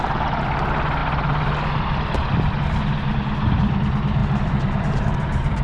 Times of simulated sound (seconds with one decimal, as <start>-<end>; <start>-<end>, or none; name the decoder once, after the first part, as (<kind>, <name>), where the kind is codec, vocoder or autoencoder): 4.2-5.6 (vocoder, BigVGAN v2)